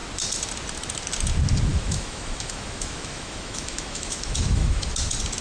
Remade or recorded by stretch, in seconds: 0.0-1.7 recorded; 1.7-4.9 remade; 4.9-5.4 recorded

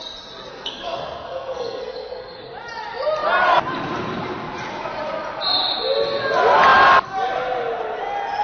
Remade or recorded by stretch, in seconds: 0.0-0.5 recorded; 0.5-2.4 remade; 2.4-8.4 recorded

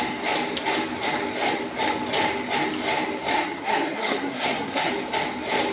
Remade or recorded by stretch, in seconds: 0.0-3.3 recorded; 3.3-4.9 remade; 4.9-5.7 recorded

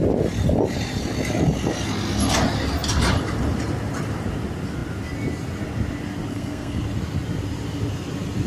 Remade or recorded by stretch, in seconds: 0.0-6.3 recorded; 6.3-6.8 remade; 6.8-8.5 recorded

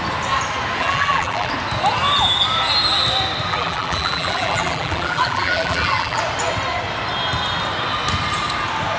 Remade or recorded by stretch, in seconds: 0.0-0.8 recorded; 0.8-1.5 remade; 1.5-3.5 recorded; 3.5-6.2 remade; 6.2-9.0 recorded

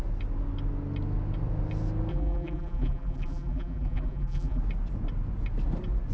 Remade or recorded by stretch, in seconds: 0.0-2.1 recorded; 2.1-4.6 remade; 4.6-6.1 recorded

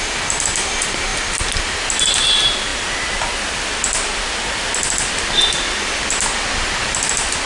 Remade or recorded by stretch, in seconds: 0.0-7.5 recorded